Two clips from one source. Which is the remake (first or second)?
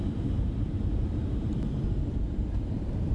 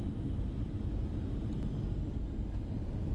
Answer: first